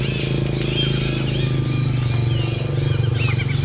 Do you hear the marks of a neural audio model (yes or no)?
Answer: no